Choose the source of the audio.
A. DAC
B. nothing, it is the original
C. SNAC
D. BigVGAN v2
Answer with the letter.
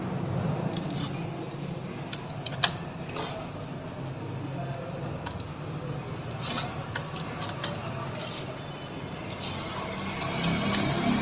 B